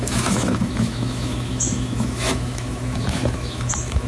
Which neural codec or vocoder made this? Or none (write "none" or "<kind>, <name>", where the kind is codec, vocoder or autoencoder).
autoencoder, DAC-VAE